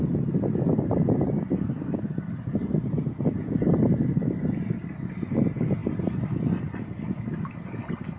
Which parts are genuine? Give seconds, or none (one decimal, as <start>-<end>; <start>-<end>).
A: 0.0-8.2